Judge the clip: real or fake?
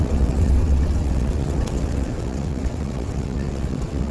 fake